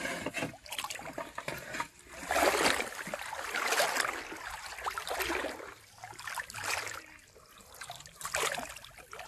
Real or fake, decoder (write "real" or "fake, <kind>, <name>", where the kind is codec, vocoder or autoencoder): real